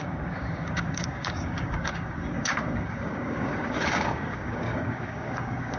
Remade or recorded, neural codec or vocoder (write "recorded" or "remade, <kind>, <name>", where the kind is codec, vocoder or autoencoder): remade, codec, DAC